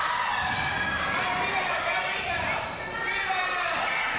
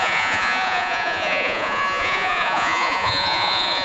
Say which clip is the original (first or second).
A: first